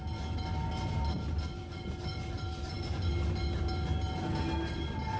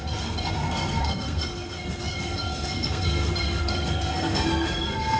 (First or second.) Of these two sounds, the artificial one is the second